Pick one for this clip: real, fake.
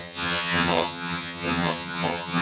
fake